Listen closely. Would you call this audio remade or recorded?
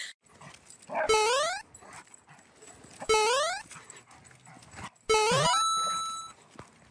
recorded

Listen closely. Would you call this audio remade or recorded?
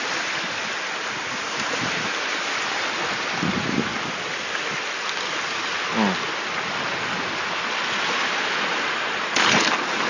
recorded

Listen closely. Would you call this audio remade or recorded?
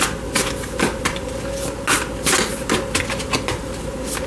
recorded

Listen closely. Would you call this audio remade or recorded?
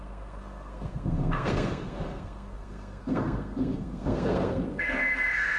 remade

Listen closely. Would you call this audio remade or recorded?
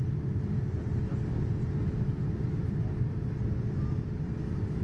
recorded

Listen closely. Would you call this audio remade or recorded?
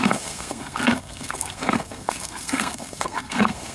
remade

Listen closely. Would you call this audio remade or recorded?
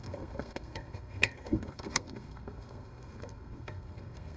remade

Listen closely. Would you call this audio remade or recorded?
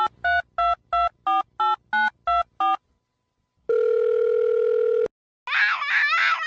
recorded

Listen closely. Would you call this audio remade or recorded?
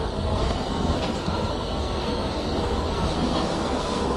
remade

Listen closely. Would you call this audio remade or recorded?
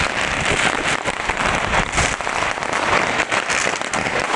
recorded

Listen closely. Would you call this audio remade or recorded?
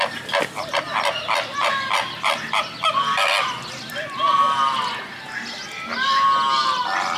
recorded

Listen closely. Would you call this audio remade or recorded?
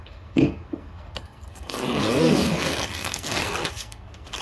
remade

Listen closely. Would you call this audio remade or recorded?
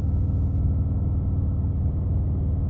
recorded